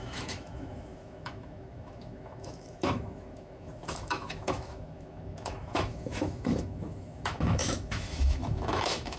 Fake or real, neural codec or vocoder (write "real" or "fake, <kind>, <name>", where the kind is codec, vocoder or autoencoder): fake, autoencoder, DAC-VAE